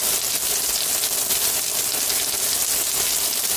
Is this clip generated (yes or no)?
no